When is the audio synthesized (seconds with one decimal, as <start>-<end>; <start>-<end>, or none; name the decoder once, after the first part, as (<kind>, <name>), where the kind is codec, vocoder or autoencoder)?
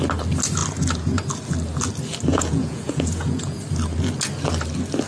2.3-3.6 (vocoder, Vocos)